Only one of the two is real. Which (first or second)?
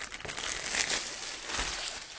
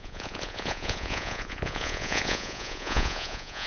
first